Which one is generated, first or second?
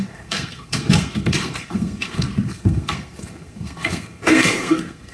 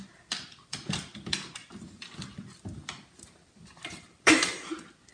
first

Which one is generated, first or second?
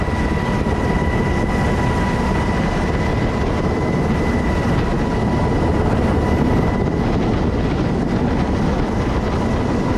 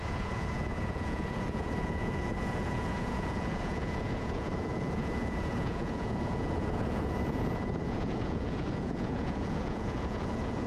second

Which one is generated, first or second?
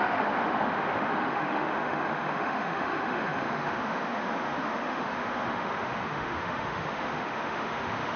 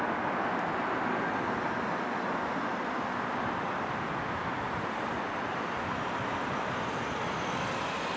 first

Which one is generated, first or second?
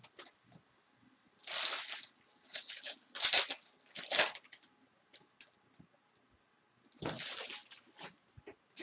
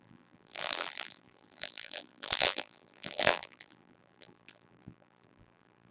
second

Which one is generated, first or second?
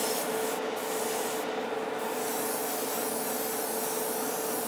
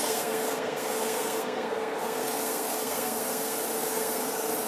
second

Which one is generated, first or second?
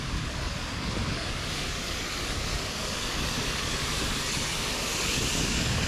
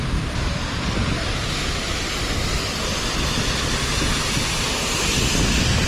first